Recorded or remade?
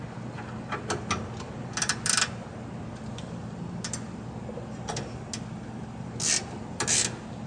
recorded